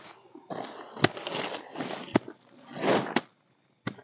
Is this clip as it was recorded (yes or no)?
yes